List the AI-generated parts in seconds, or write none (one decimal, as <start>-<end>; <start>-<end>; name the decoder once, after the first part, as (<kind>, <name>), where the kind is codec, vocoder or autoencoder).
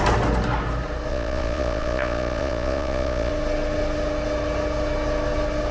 1.1-3.3 (vocoder, Vocos)